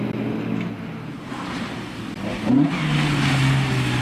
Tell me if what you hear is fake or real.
real